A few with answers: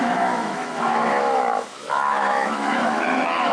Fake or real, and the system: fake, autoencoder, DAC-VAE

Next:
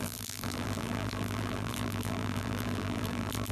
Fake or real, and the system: fake, vocoder, BigVGAN v2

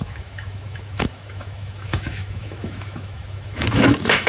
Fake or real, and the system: fake, autoencoder, DAC-VAE